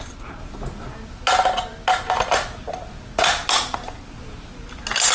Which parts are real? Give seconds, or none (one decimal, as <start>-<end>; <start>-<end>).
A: 0.0-5.1